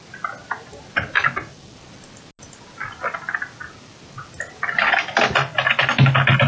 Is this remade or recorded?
recorded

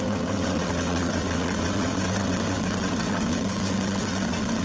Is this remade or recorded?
remade